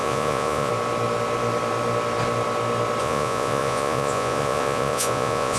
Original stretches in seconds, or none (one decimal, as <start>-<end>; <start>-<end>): 0.7-3.0